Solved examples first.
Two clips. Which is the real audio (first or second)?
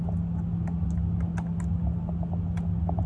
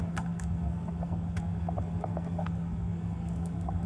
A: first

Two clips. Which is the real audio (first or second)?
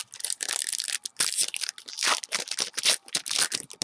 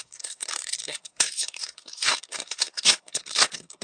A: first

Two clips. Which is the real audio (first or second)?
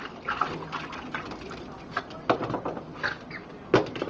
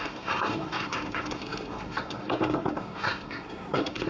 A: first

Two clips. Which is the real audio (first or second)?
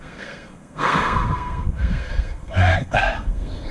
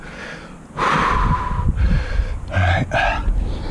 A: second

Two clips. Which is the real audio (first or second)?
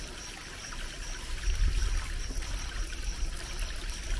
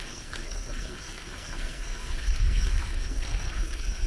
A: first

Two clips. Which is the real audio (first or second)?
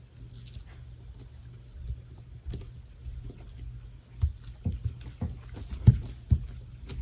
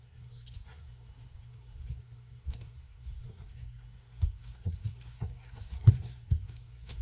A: first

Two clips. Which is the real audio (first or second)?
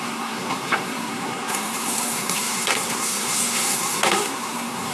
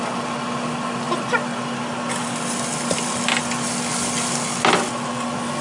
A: second